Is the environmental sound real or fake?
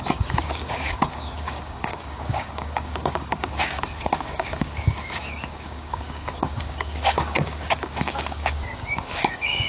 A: fake